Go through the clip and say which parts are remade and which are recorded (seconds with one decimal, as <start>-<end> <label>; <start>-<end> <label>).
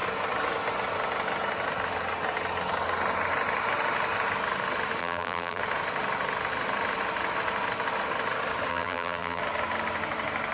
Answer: 0.0-5.0 recorded; 5.0-5.6 remade; 5.6-8.7 recorded; 8.7-9.4 remade; 9.4-10.5 recorded